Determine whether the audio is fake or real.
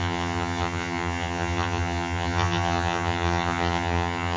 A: fake